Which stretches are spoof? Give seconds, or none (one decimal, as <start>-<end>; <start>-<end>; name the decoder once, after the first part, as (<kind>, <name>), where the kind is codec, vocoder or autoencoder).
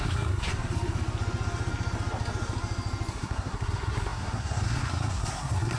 0.0-0.5 (codec, SNAC); 3.1-5.8